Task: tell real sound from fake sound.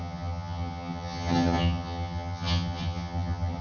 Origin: fake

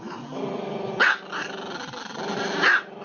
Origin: real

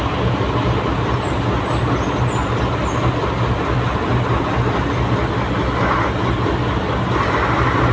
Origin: real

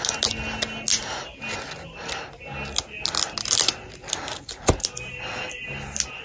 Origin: real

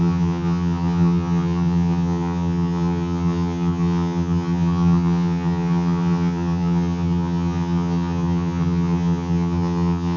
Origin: fake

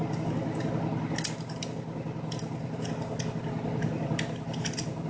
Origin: real